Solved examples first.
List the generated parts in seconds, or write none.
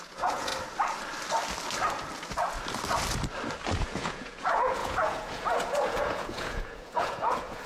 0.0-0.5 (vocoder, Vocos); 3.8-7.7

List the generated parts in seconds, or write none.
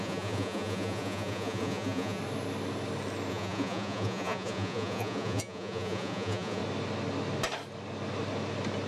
0.0-2.2 (vocoder, Vocos); 3.3-6.6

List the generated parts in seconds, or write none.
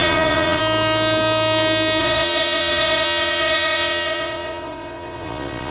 0.0-0.6 (vocoder, Vocos); 2.0-5.7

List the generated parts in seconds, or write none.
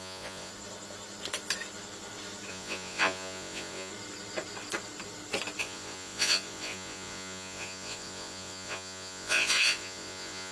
0.0-0.5 (vocoder, Vocos); 2.5-3.9; 5.6-10.5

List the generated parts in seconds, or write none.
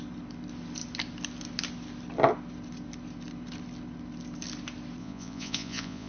5.0-6.1 (vocoder, Vocos)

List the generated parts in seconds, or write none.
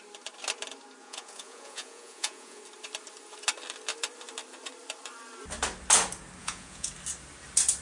1.0-2.6 (vocoder, Vocos); 6.4-6.9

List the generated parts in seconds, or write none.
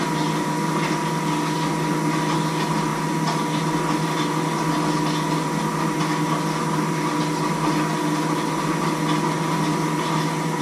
none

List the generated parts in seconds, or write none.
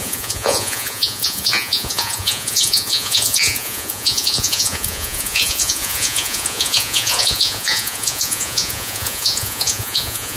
0.0-10.4 (vocoder, Vocos)